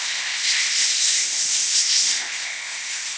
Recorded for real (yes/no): no